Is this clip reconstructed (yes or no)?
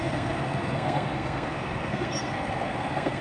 yes